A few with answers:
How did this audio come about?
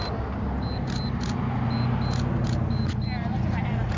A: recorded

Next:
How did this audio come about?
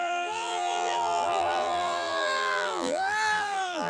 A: remade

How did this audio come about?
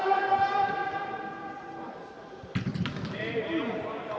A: recorded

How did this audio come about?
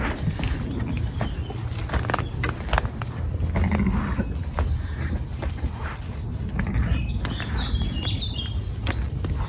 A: recorded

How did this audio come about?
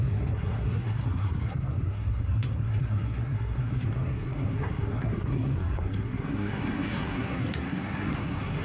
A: remade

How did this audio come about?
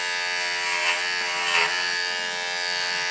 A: recorded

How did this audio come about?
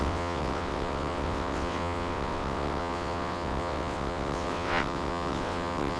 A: remade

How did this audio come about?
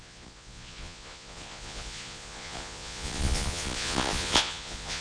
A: remade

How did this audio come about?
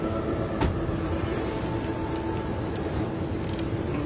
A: recorded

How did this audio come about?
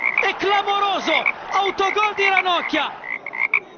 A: recorded